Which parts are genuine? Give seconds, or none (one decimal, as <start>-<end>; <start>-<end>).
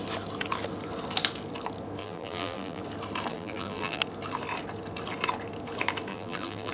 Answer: 0.0-2.0; 2.8-3.3; 4.0-6.1